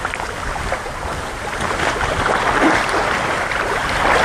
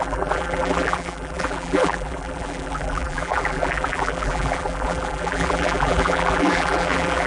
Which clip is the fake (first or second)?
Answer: second